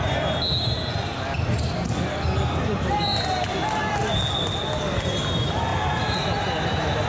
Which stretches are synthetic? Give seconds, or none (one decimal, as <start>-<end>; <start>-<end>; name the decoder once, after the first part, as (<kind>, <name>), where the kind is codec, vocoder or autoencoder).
none